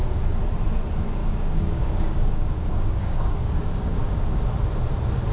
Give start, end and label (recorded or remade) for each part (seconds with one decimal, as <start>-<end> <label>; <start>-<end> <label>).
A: 0.0-1.2 recorded; 1.2-4.4 remade; 4.4-5.3 recorded